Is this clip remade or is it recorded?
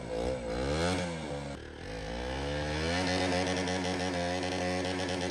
recorded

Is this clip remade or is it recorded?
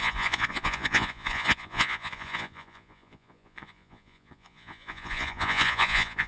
remade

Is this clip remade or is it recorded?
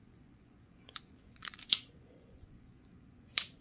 remade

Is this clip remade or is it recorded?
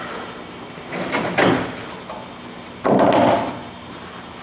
recorded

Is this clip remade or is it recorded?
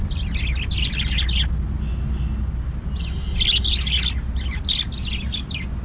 recorded